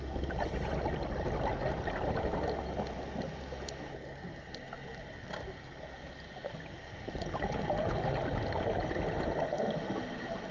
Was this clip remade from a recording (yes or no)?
no